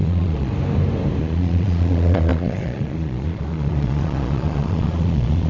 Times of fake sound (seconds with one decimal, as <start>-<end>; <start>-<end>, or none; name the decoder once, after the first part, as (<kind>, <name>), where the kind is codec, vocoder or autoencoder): 0.0-0.5 (vocoder, Vocos); 1.2-5.5